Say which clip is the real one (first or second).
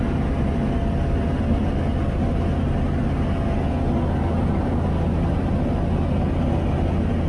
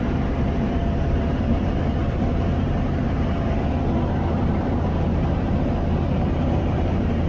first